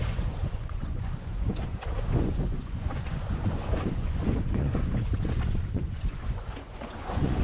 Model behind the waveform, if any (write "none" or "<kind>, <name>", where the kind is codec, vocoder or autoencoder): vocoder, Vocos